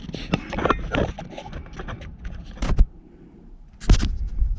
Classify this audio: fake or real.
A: real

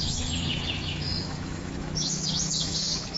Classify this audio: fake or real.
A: fake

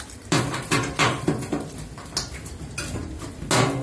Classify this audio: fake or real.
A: real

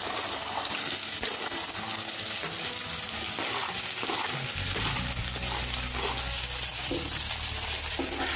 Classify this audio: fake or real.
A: real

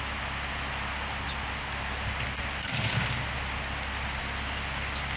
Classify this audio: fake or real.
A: real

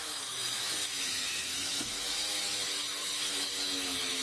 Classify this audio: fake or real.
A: fake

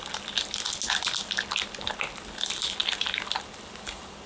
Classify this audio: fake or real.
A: real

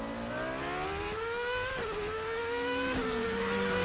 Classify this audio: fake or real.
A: real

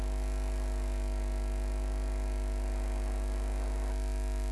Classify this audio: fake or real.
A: real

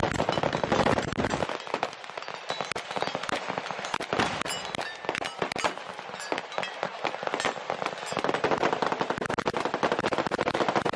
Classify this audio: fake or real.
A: real